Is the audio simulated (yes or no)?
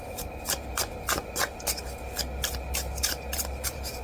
no